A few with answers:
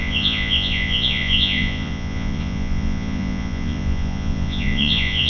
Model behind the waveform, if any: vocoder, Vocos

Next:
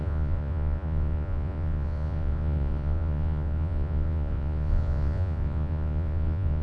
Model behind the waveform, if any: vocoder, Vocos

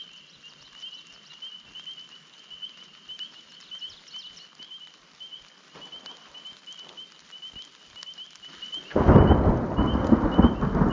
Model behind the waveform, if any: none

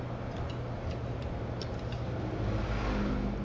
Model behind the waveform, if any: none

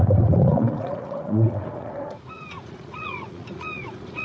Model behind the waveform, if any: vocoder, Vocos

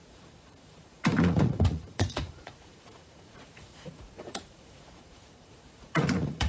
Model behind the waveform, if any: vocoder, Vocos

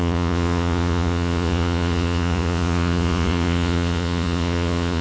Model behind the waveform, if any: vocoder, Vocos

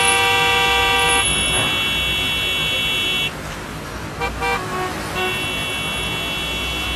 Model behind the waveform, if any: none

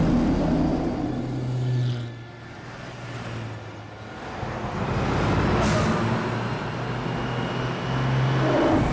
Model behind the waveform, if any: none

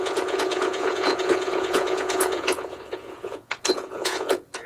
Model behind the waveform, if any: vocoder, Vocos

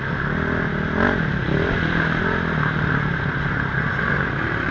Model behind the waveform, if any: none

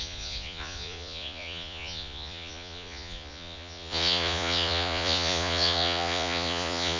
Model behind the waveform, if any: vocoder, Vocos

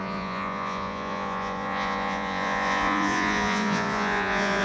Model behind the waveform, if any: vocoder, Vocos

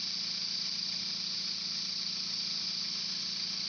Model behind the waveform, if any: none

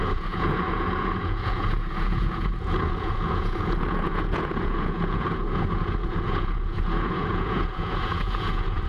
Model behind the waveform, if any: vocoder, Vocos